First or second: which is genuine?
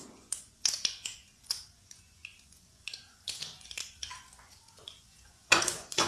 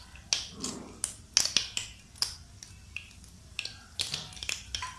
second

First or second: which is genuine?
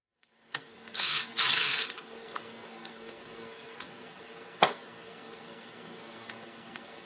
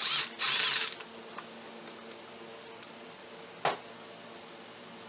second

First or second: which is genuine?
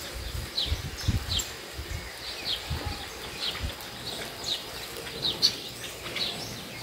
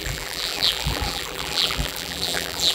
first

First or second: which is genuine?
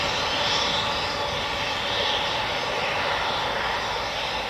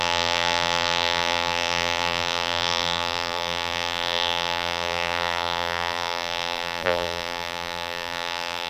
first